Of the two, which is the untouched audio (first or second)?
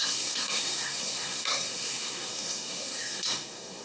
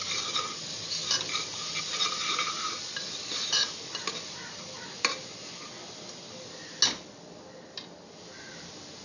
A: second